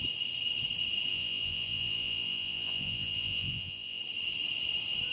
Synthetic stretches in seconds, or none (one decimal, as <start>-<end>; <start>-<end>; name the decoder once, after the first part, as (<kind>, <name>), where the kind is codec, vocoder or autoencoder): 1.1-4.0 (vocoder, Vocos)